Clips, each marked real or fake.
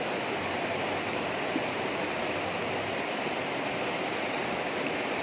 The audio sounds fake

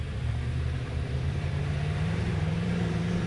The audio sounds fake